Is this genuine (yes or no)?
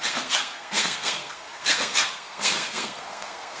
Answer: no